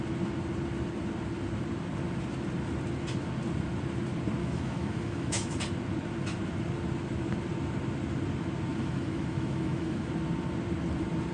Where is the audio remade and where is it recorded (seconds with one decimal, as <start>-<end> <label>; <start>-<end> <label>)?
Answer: 0.0-4.4 recorded; 4.4-5.6 remade; 5.6-8.7 recorded; 8.7-10.1 remade; 10.1-11.3 recorded